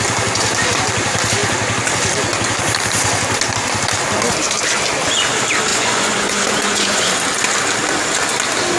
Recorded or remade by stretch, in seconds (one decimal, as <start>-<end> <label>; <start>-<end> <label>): 0.0-5.7 recorded; 5.7-7.1 remade; 7.1-8.8 recorded